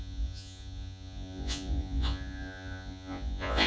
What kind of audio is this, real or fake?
fake